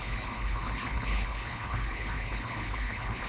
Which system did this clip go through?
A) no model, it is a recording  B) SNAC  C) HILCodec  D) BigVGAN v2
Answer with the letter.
C